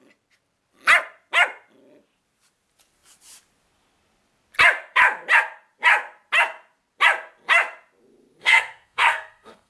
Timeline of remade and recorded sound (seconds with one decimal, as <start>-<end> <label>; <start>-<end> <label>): 0.0-8.4 recorded; 8.4-9.7 remade